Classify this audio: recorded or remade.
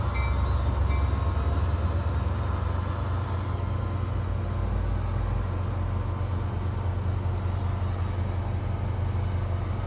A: recorded